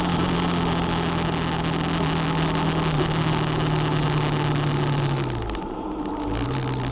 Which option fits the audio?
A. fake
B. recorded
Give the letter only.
B